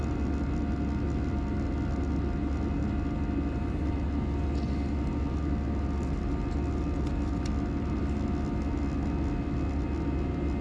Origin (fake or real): real